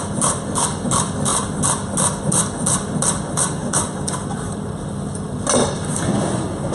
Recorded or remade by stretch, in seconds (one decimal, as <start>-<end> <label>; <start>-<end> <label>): 0.0-3.6 recorded; 3.6-4.6 remade; 4.6-6.7 recorded